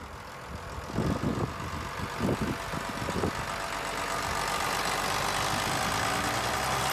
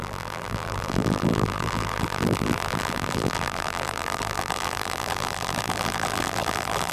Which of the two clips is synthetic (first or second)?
second